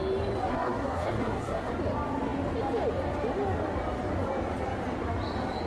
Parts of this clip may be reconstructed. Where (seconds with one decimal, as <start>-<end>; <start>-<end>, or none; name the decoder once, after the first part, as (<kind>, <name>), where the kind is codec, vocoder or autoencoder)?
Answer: 0.5-1.7 (codec, SNAC)